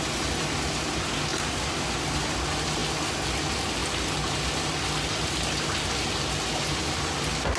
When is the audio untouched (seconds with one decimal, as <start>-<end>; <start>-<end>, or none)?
0.0-3.8; 4.3-7.6